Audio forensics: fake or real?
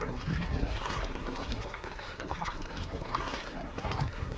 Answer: fake